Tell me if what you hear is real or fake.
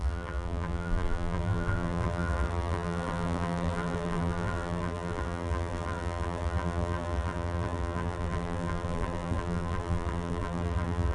fake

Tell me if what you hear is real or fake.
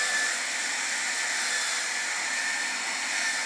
real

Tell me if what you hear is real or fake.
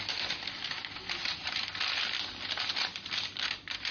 real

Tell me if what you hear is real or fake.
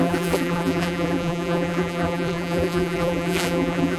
fake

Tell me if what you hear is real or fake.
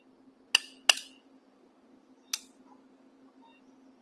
real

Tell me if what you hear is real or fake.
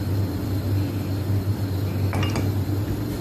real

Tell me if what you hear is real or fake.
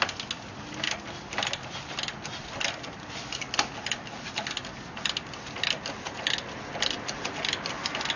real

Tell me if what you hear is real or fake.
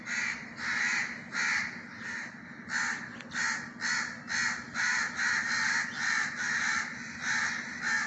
real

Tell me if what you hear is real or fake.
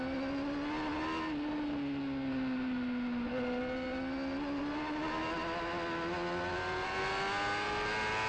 real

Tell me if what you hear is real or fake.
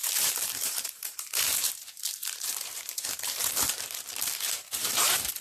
fake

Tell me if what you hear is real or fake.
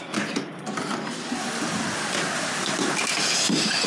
real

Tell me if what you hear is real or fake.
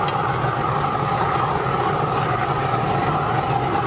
real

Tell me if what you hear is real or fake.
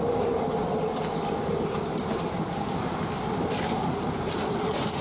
real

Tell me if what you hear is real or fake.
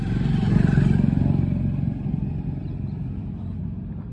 fake